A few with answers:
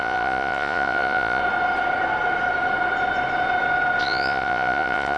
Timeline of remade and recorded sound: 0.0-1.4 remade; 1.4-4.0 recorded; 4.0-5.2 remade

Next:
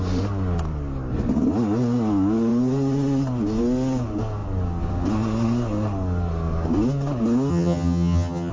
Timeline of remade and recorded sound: 0.0-7.5 recorded; 7.5-8.5 remade

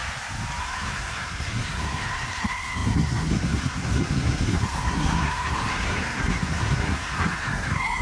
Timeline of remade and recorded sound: 0.0-0.6 recorded; 0.6-8.0 remade

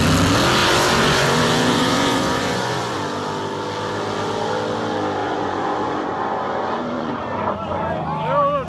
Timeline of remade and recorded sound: 0.0-0.6 recorded; 0.6-3.0 remade; 3.0-5.2 recorded; 5.2-7.1 remade; 7.1-8.7 recorded

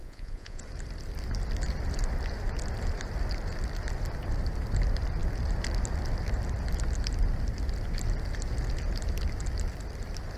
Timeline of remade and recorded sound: 0.0-0.6 remade; 0.6-10.4 recorded

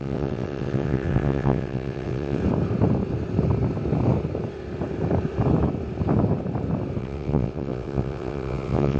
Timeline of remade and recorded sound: 0.0-2.4 remade; 2.4-7.0 recorded; 7.0-9.0 remade

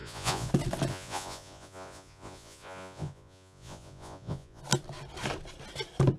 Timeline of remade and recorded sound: 0.0-0.5 remade; 0.5-0.9 recorded; 0.9-4.6 remade; 4.6-6.2 recorded